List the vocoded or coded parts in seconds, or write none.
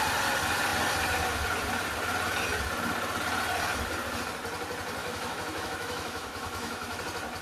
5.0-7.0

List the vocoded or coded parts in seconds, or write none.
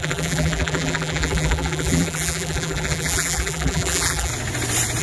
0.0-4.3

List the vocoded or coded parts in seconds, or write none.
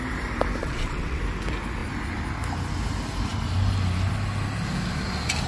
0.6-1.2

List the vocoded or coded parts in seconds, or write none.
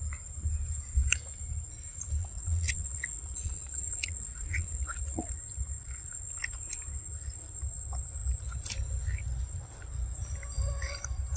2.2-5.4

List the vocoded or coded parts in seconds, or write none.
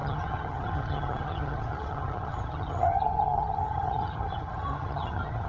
0.0-5.5